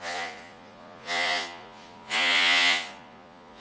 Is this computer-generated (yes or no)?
yes